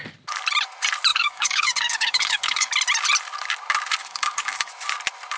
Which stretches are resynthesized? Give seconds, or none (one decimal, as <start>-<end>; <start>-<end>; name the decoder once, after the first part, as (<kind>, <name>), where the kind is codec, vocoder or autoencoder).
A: 1.1-2.7 (codec, DAC); 4.0-4.7